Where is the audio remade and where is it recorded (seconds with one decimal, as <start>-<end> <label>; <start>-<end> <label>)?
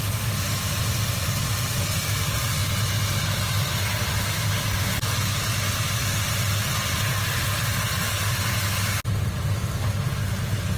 0.0-10.8 recorded